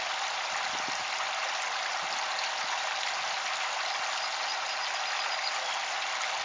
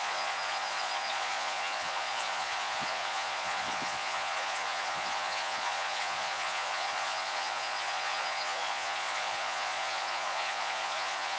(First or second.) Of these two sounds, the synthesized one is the second